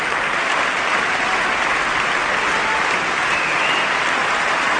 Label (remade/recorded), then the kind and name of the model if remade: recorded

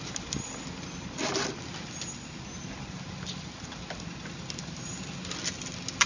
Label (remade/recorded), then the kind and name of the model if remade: recorded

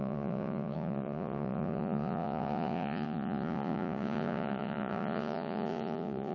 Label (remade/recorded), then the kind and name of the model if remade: remade, vocoder, Vocos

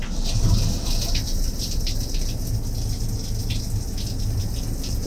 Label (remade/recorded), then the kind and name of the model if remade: recorded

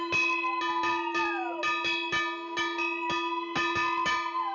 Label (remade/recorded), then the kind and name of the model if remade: recorded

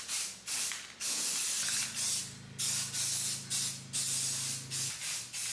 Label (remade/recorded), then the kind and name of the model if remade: recorded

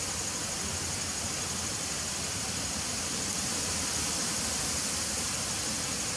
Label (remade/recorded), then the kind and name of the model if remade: recorded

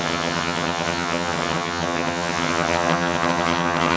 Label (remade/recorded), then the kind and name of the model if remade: remade, vocoder, HiFi-GAN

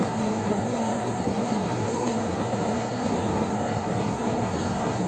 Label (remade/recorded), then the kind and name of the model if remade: remade, codec, SNAC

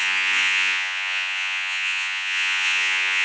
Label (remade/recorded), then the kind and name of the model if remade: remade, vocoder, Vocos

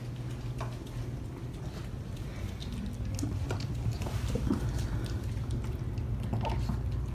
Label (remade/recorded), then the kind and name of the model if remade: recorded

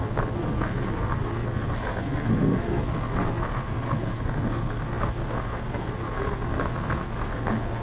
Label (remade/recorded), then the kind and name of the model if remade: remade, codec, SNAC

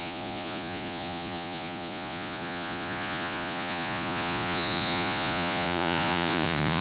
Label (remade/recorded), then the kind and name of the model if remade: remade, vocoder, Vocos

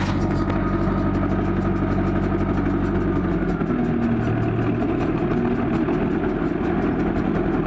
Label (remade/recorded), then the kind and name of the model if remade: recorded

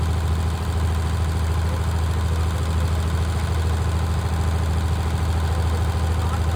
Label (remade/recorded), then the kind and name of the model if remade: recorded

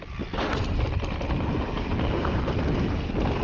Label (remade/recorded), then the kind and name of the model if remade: recorded